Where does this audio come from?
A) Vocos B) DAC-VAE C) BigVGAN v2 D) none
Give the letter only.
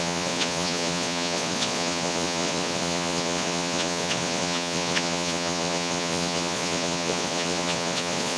A